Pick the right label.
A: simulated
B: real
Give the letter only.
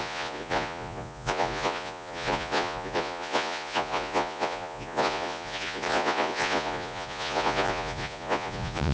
A